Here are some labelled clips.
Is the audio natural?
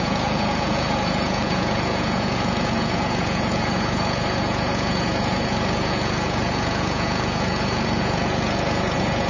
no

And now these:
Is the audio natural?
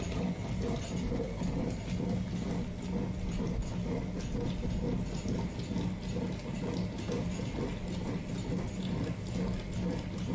yes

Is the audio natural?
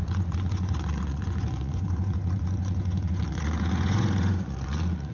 no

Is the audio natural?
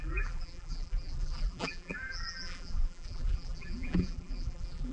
no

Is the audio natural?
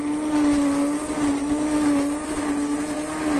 yes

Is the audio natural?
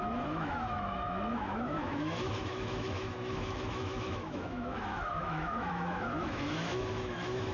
no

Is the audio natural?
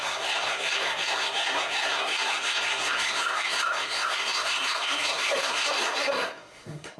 no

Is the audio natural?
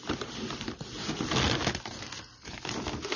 yes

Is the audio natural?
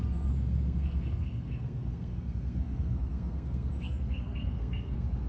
no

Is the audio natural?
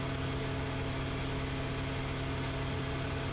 yes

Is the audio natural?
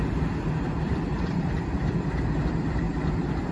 no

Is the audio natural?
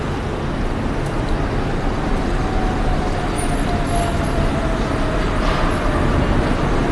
yes